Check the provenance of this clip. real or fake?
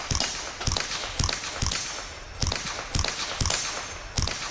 real